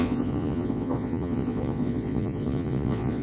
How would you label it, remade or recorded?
remade